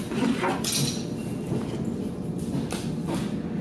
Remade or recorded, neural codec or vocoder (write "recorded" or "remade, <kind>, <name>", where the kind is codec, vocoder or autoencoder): recorded